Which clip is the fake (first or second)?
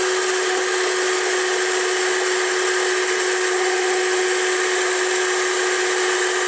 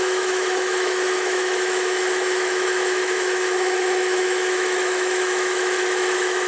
second